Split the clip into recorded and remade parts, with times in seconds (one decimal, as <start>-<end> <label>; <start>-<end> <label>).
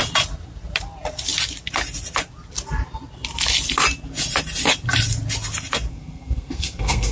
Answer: 0.0-5.9 recorded; 5.9-7.1 remade